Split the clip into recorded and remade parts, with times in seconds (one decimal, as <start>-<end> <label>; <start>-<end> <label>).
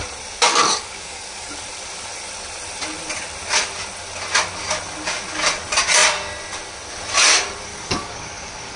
0.0-0.5 recorded; 0.5-1.5 remade; 1.5-7.7 recorded; 7.7-8.8 remade